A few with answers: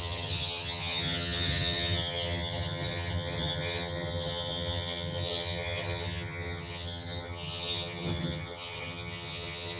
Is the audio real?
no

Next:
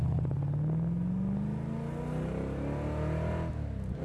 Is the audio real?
yes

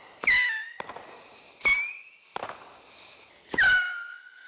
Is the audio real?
yes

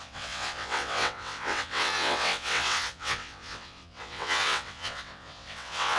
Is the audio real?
no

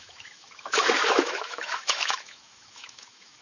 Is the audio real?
no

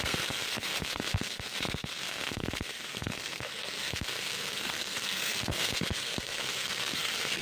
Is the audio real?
no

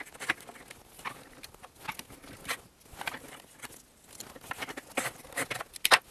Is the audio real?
yes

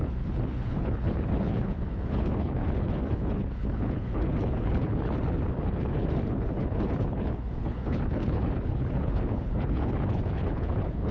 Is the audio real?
no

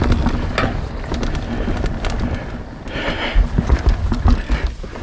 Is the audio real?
yes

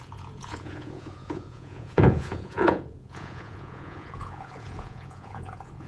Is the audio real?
no